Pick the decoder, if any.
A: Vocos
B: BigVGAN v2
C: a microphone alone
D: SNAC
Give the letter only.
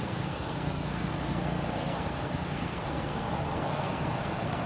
D